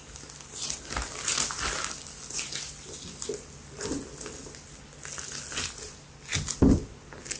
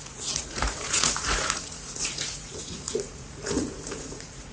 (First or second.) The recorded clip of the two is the first